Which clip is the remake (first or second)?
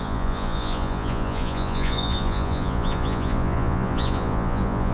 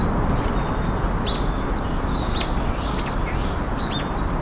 first